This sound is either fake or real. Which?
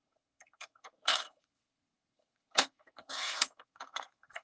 fake